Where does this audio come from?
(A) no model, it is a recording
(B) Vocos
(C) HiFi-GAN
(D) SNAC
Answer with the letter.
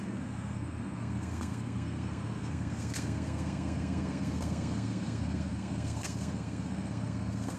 D